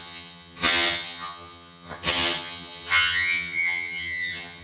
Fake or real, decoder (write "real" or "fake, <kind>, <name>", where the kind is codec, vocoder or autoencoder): fake, vocoder, HiFi-GAN